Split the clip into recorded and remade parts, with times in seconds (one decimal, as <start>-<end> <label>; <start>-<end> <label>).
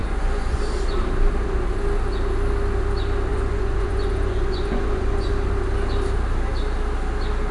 0.0-0.6 remade; 0.6-3.3 recorded; 3.3-5.3 remade; 5.3-7.5 recorded